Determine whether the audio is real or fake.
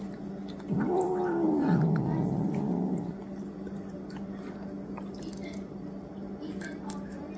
real